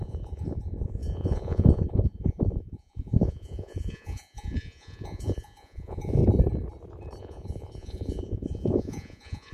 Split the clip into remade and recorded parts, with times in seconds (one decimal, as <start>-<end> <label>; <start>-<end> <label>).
0.0-6.2 remade; 6.2-7.2 recorded; 7.2-9.5 remade